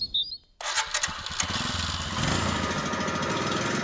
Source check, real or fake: real